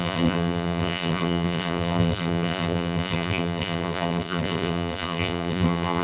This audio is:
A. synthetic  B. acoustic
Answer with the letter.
A